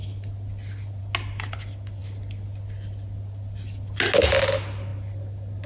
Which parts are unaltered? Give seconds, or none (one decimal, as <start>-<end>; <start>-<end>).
0.0-5.7